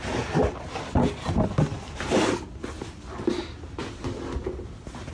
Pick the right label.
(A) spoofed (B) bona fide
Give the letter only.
B